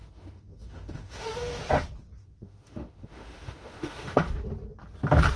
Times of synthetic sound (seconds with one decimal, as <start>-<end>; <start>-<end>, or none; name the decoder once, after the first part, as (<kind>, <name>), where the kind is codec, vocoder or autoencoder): 0.0-1.3 (autoencoder, DAC-VAE); 2.2-4.4